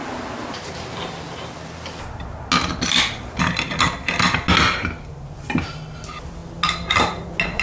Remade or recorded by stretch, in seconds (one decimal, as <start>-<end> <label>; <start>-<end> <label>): 0.0-7.6 recorded